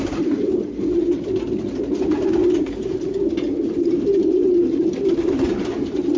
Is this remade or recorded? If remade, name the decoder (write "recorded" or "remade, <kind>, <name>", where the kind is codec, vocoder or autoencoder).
remade, vocoder, BigVGAN v2